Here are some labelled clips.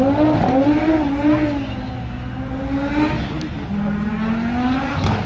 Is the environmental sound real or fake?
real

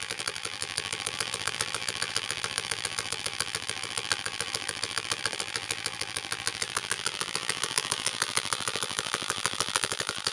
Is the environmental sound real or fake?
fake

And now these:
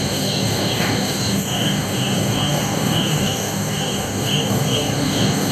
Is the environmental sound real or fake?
fake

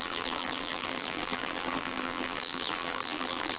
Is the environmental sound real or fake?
fake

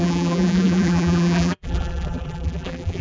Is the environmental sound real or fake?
fake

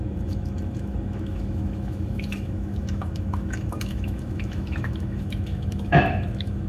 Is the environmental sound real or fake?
fake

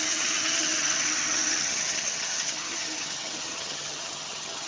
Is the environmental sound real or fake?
fake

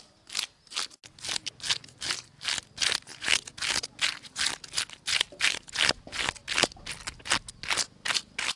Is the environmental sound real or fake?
real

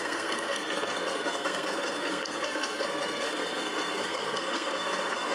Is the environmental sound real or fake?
fake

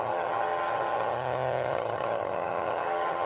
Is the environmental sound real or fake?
fake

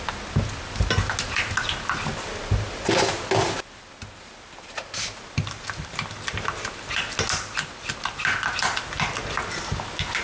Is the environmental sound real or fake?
real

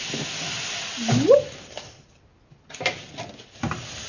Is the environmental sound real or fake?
real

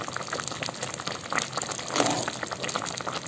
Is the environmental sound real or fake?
real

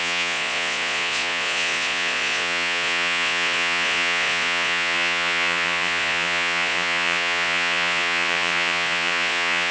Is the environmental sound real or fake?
fake